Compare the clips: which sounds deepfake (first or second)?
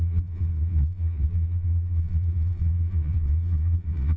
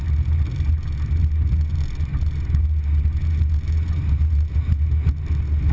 first